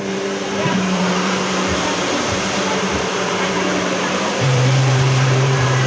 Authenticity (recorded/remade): remade